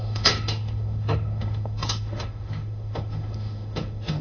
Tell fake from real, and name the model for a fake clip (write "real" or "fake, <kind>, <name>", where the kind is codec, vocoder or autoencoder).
fake, autoencoder, DAC-VAE